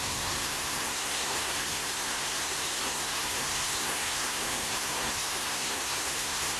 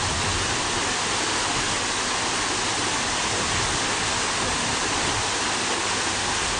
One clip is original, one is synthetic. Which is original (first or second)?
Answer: second